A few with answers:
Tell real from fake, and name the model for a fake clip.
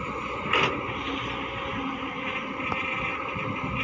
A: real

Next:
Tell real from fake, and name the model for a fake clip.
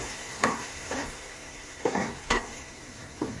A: fake, codec, SNAC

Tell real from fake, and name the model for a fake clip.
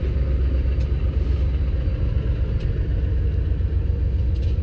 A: real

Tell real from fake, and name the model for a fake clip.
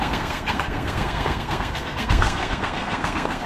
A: fake, codec, SNAC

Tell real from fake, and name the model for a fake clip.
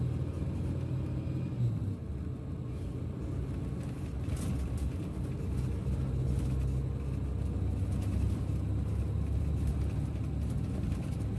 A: real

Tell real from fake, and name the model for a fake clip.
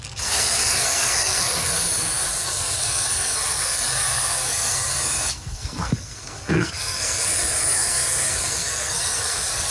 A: fake, codec, SNAC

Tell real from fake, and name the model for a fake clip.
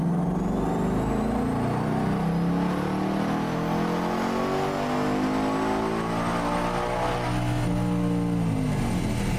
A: real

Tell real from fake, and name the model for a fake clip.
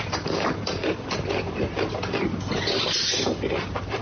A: real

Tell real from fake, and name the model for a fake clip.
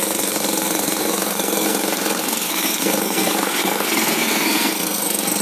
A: fake, codec, SNAC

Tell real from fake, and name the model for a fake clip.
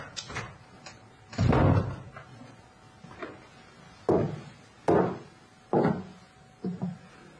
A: real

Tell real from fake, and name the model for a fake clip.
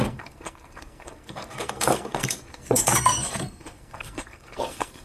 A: fake, codec, SNAC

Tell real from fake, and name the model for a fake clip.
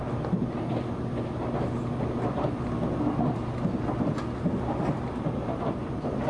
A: real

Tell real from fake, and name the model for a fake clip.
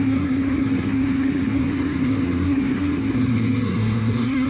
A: fake, codec, SNAC